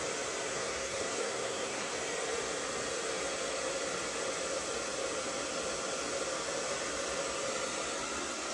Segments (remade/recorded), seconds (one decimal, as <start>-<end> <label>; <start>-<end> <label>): 0.0-0.5 recorded; 0.5-1.9 remade; 1.9-8.5 recorded